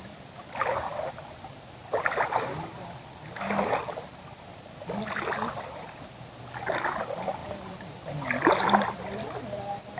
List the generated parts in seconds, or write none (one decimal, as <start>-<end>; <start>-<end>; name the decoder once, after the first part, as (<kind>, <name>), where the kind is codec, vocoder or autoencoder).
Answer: none